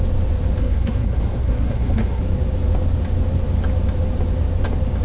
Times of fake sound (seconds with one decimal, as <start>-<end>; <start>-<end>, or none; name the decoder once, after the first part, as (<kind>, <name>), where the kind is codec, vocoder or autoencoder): 0.6-2.2 (codec, SNAC)